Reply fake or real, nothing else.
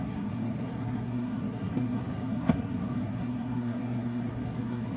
fake